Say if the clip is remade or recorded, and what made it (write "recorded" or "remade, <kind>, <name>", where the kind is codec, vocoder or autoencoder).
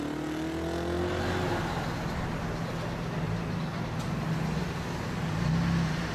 recorded